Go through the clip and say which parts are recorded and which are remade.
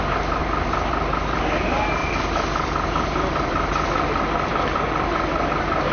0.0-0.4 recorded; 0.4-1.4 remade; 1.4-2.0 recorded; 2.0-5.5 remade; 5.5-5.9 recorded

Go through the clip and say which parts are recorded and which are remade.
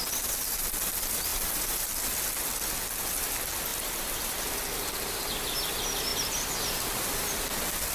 0.0-3.7 recorded; 3.7-4.5 remade; 4.5-7.9 recorded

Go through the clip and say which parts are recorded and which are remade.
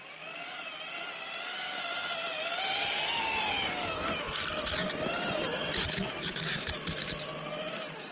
0.0-5.4 recorded; 5.4-7.3 remade; 7.3-8.1 recorded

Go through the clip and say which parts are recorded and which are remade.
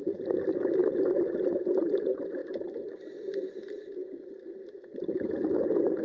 0.0-0.8 remade; 0.8-1.5 recorded; 1.5-2.4 remade; 2.4-3.5 recorded; 3.5-4.0 remade; 4.0-4.8 recorded; 4.8-6.0 remade